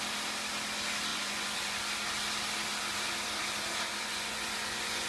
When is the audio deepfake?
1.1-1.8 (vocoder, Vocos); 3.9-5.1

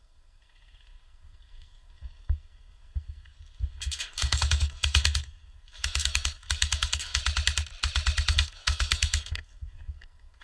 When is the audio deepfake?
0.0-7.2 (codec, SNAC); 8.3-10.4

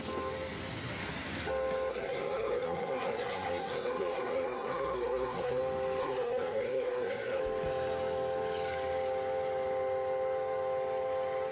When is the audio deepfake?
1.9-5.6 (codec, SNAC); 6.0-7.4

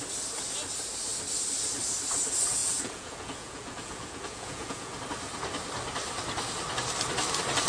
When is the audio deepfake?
2.6-5.0 (vocoder, Vocos)

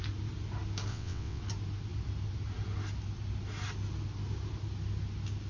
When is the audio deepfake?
0.9-1.4 (vocoder, WaveNeXt)